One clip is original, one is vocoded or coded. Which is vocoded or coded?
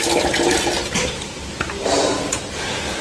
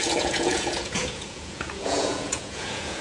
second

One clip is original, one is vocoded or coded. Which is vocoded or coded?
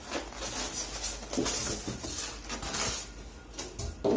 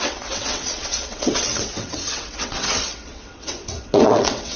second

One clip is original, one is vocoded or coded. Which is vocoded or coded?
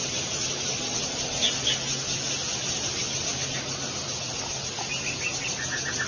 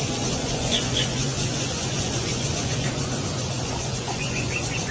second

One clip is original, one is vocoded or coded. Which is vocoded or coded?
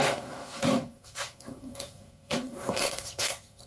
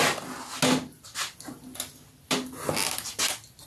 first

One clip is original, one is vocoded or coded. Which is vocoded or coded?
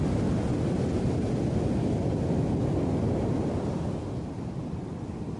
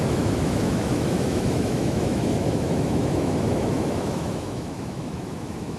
second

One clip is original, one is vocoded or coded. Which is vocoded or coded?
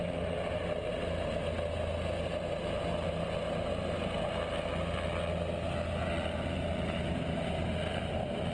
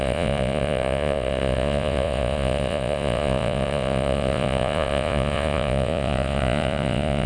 second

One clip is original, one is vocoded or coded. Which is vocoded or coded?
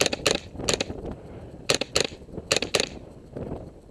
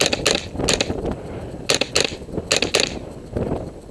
first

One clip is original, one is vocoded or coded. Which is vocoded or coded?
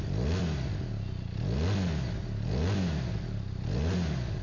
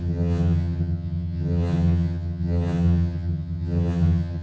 second